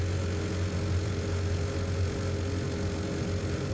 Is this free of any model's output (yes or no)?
yes